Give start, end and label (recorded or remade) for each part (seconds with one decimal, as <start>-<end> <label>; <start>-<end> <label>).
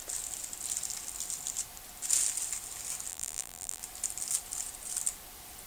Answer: 0.0-3.1 recorded; 3.1-3.8 remade; 3.8-5.7 recorded